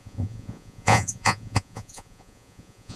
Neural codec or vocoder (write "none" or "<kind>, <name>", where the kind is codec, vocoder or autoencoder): vocoder, Vocos